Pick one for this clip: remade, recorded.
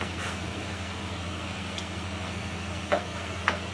remade